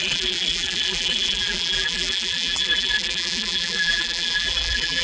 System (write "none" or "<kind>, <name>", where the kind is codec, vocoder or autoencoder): vocoder, BigVGAN v2